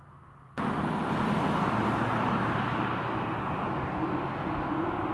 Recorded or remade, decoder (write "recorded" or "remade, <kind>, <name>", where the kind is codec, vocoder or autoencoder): recorded